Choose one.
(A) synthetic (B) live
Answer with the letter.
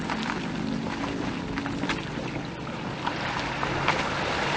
B